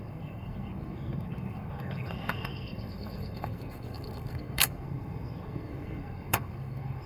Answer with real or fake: fake